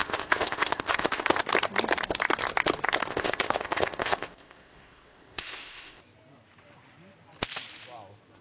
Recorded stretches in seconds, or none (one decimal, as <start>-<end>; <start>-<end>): 1.4-3.1; 6.0-8.4